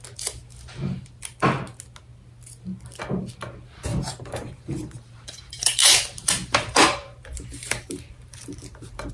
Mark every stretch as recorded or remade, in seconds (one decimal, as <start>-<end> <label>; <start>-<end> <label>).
0.0-3.9 recorded; 3.9-9.1 remade